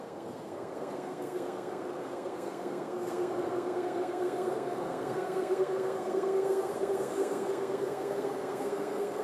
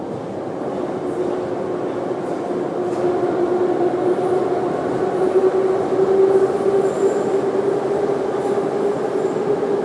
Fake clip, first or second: first